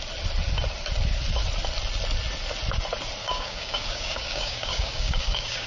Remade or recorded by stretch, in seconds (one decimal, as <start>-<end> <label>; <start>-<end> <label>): 0.0-3.2 recorded; 3.2-5.7 remade